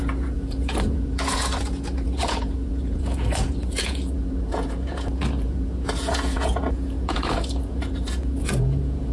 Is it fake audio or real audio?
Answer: fake